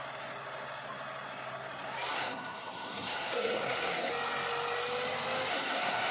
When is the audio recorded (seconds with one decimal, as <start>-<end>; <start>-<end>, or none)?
0.0-2.1; 4.1-5.5